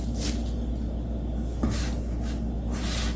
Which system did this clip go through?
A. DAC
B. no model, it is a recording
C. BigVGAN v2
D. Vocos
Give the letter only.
B